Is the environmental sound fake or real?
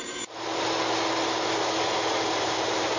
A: real